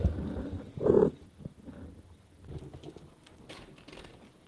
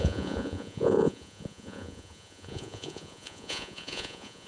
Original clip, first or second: first